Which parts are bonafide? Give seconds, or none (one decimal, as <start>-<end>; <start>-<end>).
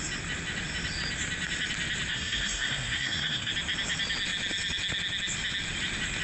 0.0-2.1; 3.5-6.2